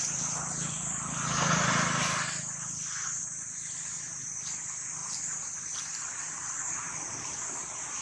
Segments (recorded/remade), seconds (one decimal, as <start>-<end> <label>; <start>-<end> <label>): 0.0-8.0 remade